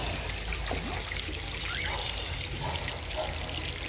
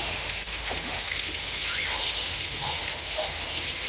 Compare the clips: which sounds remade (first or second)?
second